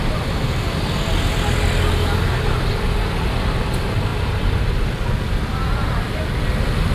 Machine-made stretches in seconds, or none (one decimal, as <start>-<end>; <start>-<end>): 4.1-6.5